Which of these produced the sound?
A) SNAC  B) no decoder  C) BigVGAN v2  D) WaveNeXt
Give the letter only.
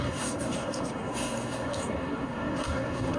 A